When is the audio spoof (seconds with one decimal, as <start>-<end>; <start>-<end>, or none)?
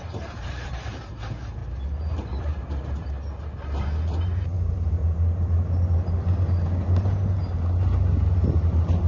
0.0-1.6; 2.2-5.0